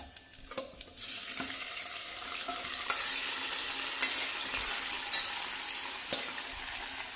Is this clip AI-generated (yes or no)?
no